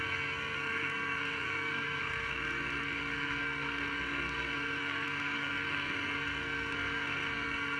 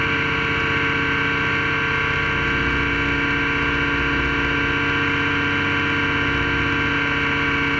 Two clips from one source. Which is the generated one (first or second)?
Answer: first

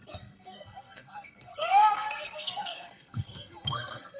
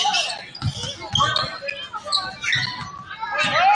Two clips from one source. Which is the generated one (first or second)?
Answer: first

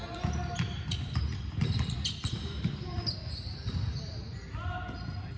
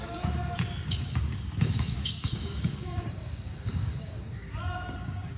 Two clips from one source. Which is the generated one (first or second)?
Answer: second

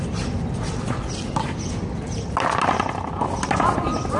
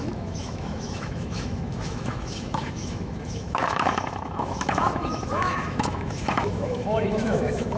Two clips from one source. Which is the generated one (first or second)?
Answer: second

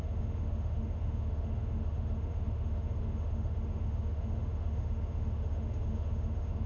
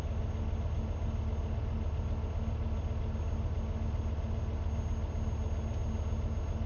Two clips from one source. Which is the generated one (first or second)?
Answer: first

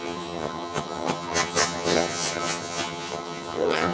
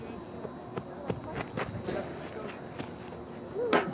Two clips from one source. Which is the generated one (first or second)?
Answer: first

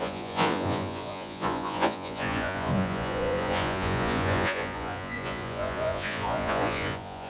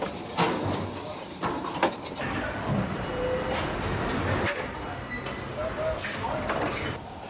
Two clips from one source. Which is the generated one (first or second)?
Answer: first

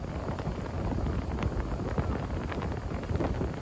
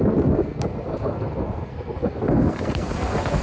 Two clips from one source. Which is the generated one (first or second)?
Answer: second